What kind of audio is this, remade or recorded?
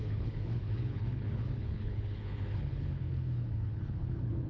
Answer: remade